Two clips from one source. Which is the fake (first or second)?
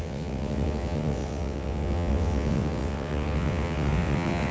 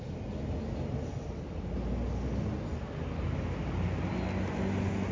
first